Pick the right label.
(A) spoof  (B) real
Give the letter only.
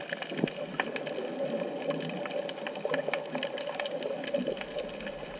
B